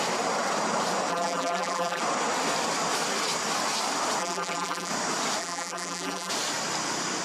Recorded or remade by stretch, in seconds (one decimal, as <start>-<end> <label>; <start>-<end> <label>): 0.0-1.1 recorded; 1.1-2.0 remade; 2.0-4.2 recorded; 4.2-4.9 remade; 4.9-5.4 recorded; 5.4-6.3 remade; 6.3-7.2 recorded